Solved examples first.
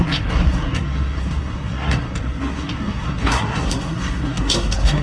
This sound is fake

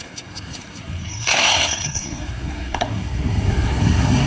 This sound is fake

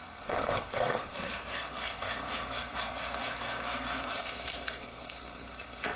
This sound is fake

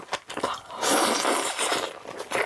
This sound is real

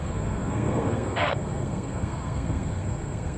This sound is fake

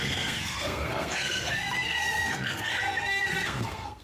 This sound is fake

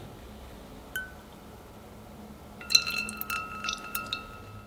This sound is real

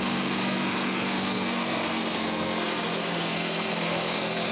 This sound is fake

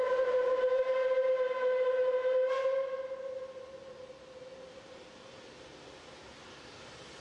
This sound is real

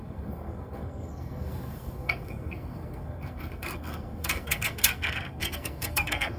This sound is fake